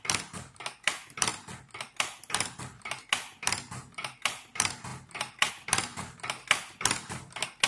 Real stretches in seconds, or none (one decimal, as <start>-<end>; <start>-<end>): 0.0-7.7